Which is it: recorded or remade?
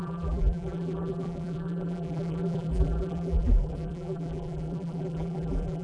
remade